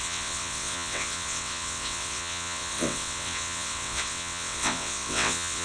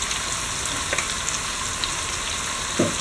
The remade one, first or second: first